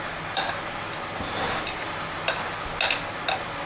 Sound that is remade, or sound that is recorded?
recorded